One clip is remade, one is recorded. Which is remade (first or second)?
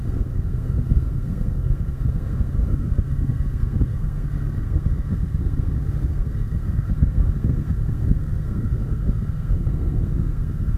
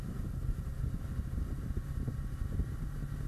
first